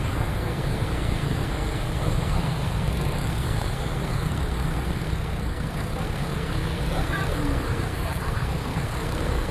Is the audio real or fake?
fake